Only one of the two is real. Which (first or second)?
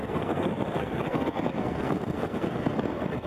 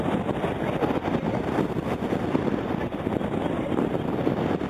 second